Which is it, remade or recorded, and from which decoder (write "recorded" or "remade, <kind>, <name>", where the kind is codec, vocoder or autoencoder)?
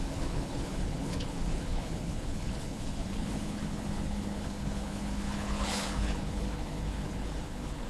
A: remade, codec, HILCodec